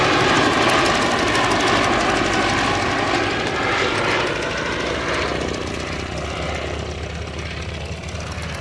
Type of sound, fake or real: real